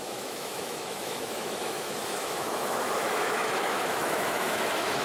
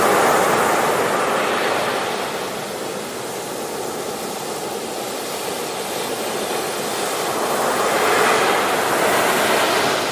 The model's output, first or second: first